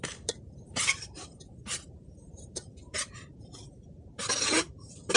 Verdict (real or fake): fake